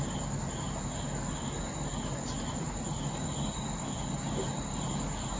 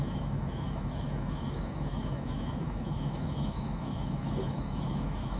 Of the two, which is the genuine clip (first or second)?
first